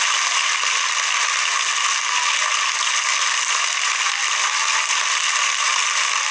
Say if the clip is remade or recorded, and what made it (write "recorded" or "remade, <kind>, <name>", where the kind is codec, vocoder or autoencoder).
recorded